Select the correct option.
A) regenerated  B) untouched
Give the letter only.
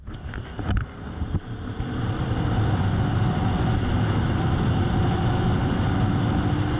B